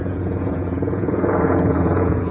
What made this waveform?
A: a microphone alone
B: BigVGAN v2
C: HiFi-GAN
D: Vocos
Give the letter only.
D